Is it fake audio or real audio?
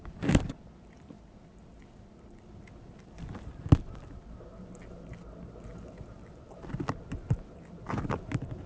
real